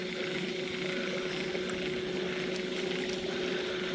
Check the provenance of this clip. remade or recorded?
recorded